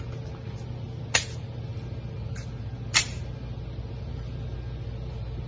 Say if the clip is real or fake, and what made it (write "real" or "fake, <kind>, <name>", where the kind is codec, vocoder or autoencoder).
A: real